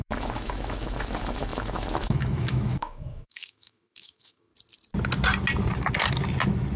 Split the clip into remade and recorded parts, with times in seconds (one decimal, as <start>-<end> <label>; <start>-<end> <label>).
0.0-4.5 remade; 4.5-6.8 recorded